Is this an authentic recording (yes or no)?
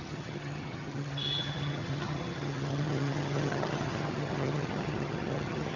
no